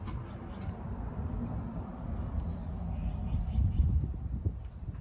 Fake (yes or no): no